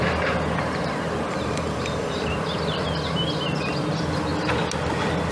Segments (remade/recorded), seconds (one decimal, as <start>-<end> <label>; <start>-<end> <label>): 0.0-1.3 recorded; 1.3-2.3 remade; 2.3-5.3 recorded